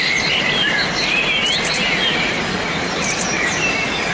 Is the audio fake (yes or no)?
no